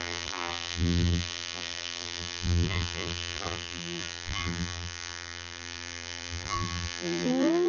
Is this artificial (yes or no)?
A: yes